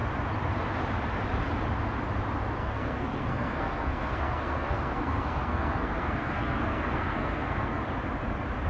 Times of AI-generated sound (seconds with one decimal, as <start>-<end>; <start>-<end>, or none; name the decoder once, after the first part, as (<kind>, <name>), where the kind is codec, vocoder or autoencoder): 2.6-7.8 (codec, SNAC)